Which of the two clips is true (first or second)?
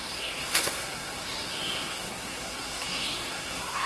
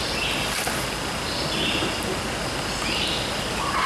second